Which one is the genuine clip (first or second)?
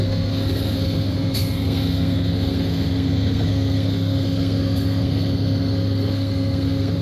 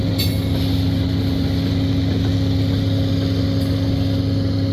second